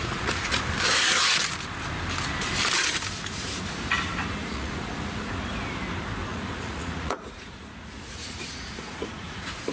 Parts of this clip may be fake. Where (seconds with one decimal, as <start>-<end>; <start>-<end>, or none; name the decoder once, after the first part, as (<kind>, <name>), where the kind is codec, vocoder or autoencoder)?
0.0-0.6 (vocoder, Vocos); 4.4-5.3; 6.3-9.7